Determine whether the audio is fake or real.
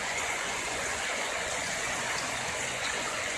fake